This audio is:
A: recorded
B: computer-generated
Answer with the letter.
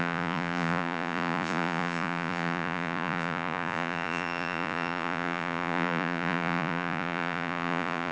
B